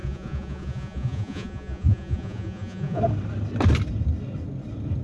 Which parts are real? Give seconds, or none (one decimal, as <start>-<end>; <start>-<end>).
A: 3.0-5.0